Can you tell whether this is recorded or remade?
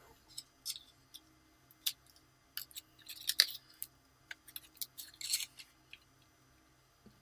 recorded